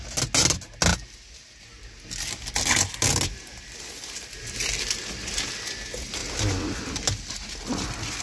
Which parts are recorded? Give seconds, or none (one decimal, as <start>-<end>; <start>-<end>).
0.0-8.2